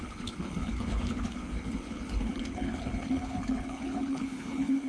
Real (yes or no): no